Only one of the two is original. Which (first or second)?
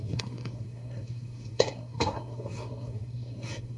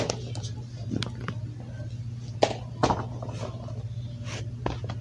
second